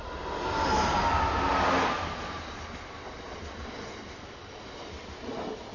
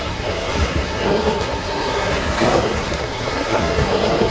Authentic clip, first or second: first